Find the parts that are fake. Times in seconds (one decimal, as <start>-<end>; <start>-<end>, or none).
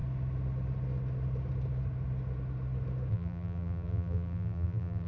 3.1-5.1